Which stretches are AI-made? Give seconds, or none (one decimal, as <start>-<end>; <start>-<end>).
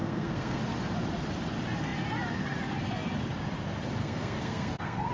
0.0-0.6; 4.0-5.1